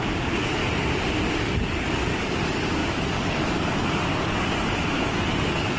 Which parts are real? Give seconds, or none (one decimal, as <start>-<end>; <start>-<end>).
0.6-1.4